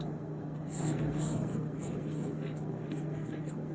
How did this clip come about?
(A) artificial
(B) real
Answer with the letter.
A